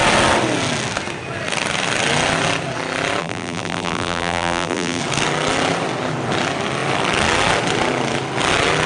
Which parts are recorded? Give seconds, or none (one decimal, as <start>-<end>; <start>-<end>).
0.0-3.2; 5.0-8.9